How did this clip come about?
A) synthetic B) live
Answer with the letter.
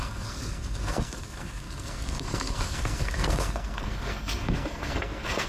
A